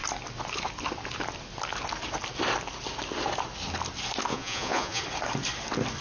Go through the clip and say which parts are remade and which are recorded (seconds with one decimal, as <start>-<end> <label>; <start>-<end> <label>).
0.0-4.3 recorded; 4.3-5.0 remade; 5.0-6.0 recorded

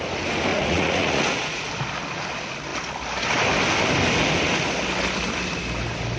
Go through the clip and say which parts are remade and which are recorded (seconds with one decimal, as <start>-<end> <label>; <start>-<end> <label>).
0.0-0.5 recorded; 0.5-1.7 remade; 1.7-6.2 recorded

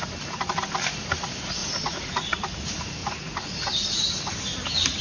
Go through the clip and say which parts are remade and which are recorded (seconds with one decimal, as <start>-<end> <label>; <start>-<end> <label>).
0.0-1.6 recorded; 1.6-2.4 remade; 2.4-3.0 recorded; 3.0-4.3 remade; 4.3-5.0 recorded

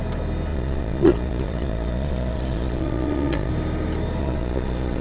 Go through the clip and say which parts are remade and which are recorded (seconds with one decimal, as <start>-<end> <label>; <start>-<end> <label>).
0.0-0.5 recorded; 0.5-3.5 remade; 3.5-4.2 recorded; 4.2-5.0 remade